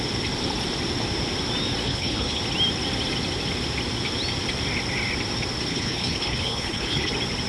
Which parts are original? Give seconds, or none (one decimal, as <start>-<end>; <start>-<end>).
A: 0.0-1.8; 2.4-5.7; 7.1-7.5